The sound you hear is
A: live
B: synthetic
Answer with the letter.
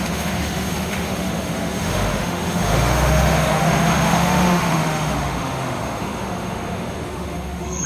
B